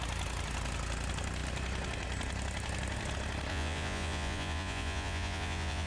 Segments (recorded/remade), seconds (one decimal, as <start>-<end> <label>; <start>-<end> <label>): 0.0-3.5 recorded; 3.5-5.9 remade